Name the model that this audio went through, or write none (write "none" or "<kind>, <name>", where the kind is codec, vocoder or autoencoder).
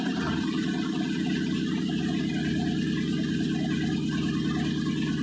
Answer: none